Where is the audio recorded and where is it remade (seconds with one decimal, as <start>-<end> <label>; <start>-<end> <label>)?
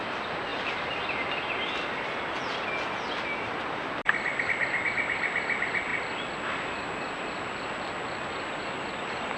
0.0-9.4 recorded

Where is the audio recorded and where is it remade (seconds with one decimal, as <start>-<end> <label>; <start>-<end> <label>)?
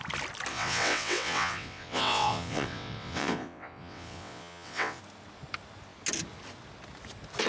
0.0-0.5 recorded; 0.5-5.0 remade; 5.0-7.5 recorded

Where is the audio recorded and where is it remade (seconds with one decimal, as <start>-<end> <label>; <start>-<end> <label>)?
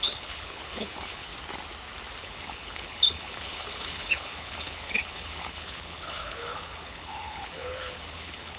0.0-1.3 remade; 1.3-2.2 recorded; 2.2-8.6 remade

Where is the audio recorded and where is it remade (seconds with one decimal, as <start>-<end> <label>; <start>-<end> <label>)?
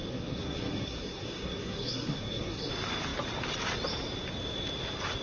0.0-2.7 remade; 2.7-5.2 recorded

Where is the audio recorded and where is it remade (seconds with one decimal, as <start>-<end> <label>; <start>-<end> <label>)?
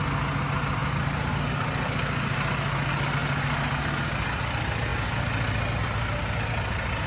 0.0-0.8 recorded; 0.8-1.3 remade; 1.3-3.2 recorded; 3.2-3.9 remade; 3.9-7.1 recorded